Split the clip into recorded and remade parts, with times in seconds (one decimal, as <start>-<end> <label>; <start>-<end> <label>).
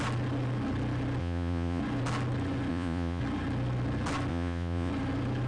0.0-1.2 recorded; 1.2-1.8 remade; 1.8-2.7 recorded; 2.7-3.2 remade; 3.2-4.3 recorded; 4.3-4.9 remade; 4.9-5.5 recorded